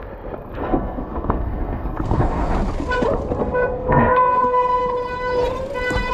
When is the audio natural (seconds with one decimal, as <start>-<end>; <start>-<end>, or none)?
0.0-0.6; 2.5-3.4; 4.8-6.1